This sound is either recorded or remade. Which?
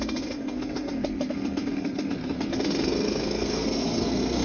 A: remade